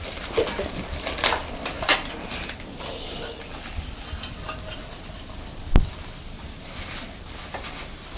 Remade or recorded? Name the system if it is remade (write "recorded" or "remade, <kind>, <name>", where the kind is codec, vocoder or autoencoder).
recorded